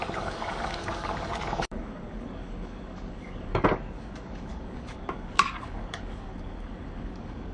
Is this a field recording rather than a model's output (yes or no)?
no